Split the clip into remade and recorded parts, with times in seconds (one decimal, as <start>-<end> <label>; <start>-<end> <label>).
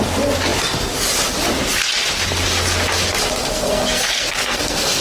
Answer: 0.0-3.4 recorded; 3.4-5.0 remade